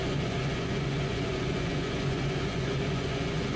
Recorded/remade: remade